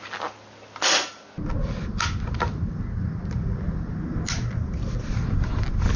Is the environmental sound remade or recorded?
recorded